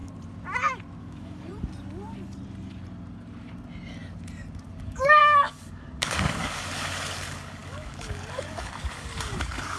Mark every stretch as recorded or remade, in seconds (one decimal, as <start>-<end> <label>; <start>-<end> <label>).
0.0-1.0 recorded; 1.0-1.5 remade; 1.5-4.8 recorded; 4.8-9.8 remade